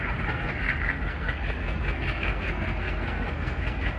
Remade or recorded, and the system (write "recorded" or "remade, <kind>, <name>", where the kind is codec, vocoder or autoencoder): remade, codec, SNAC